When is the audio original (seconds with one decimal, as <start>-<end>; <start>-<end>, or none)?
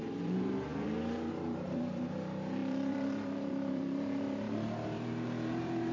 none